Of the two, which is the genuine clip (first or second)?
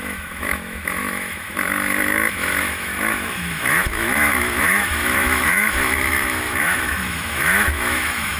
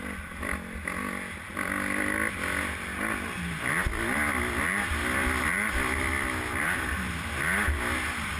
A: second